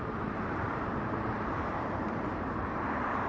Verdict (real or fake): fake